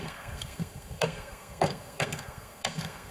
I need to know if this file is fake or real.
fake